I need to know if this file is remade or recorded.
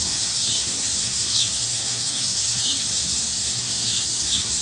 remade